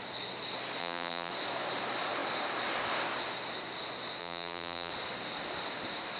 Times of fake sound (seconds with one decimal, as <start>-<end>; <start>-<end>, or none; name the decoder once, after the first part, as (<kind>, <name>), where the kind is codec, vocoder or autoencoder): 0.8-1.3 (vocoder, BigVGAN v2); 4.2-4.9